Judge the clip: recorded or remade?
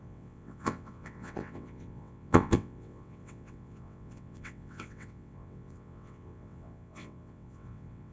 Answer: remade